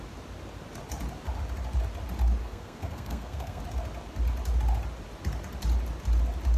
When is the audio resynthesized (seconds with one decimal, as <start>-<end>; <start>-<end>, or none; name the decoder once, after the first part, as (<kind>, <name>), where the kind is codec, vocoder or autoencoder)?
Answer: 2.4-3.6 (codec, SNAC)

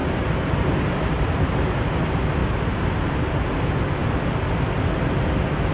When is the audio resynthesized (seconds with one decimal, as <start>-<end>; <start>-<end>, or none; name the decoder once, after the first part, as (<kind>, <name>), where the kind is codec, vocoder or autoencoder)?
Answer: none

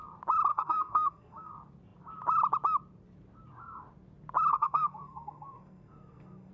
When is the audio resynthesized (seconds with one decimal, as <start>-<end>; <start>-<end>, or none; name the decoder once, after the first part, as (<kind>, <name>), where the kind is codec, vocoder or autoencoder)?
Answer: 0.5-1.5 (codec, SNAC); 4.5-6.5

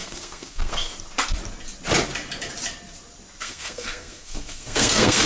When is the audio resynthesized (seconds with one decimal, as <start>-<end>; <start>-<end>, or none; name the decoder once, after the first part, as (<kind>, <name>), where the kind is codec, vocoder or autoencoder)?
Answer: 0.0-0.9 (codec, SNAC); 3.4-5.3

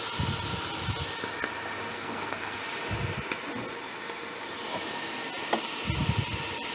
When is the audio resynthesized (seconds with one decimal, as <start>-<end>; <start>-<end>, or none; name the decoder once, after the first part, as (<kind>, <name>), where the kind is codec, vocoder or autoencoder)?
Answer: 1.9-2.6 (codec, SNAC)

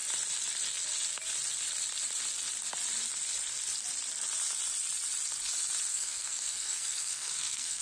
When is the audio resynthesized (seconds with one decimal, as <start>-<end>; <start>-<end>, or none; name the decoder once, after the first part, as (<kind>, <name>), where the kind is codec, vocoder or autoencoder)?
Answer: 5.9-7.8 (codec, SNAC)

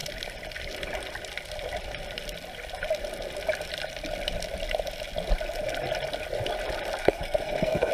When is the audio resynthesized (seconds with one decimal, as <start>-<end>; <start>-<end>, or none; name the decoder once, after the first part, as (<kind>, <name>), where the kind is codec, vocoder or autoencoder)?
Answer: 7.0-7.9 (codec, SNAC)